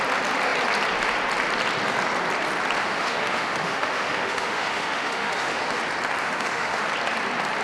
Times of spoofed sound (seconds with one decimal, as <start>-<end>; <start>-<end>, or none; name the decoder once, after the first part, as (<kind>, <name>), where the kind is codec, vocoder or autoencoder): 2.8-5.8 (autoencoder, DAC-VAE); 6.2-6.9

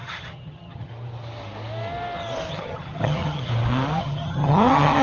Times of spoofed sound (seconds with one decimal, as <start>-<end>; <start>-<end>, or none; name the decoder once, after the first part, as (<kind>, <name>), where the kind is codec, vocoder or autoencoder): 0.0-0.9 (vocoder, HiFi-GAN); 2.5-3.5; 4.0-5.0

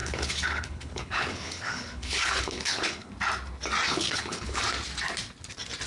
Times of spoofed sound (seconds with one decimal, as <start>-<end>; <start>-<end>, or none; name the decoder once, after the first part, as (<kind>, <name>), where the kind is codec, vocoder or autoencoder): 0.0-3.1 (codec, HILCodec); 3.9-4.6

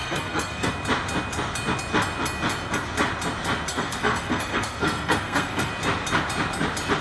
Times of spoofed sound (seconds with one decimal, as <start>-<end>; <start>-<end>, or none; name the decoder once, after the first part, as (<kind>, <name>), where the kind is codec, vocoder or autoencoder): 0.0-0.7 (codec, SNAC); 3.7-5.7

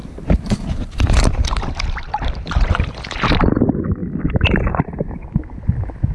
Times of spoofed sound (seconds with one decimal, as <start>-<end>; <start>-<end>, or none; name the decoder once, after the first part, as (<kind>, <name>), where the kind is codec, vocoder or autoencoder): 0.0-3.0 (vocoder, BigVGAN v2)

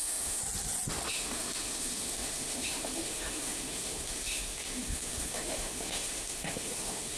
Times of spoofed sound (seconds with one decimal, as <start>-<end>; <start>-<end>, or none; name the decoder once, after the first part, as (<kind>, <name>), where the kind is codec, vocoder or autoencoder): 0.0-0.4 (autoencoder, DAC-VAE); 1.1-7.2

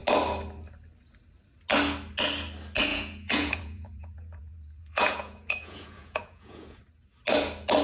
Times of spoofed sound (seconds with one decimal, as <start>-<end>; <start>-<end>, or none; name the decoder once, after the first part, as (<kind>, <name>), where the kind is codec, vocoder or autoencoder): 2.9-6.8 (vocoder, Vocos)